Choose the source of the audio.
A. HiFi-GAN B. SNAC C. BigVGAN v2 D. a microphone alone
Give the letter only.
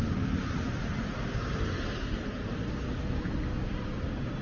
D